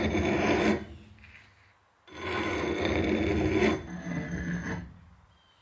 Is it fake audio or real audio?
real